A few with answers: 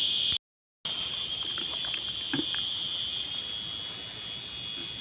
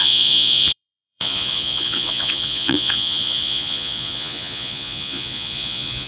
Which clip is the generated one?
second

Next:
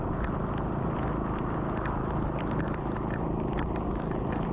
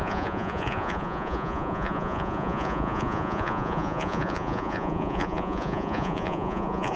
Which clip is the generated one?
second